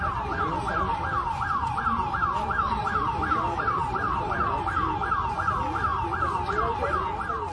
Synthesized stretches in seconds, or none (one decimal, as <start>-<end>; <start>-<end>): 1.2-4.9